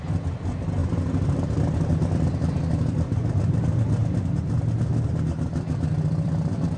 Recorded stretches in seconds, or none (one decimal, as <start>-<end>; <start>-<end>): 0.8-1.9